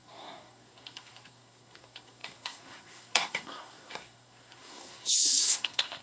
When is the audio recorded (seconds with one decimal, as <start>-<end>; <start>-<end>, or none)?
none